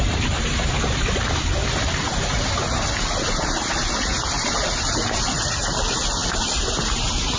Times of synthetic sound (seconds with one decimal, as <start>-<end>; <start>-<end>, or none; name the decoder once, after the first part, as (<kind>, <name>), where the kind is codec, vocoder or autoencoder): none